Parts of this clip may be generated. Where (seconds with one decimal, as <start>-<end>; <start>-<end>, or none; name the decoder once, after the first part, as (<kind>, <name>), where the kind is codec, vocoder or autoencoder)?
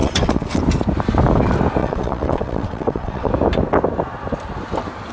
0.0-0.6 (vocoder, WaveNeXt); 1.8-3.3